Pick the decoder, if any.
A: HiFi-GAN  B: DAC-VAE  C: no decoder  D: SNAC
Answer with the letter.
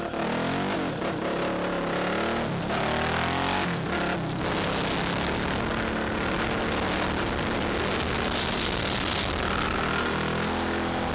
C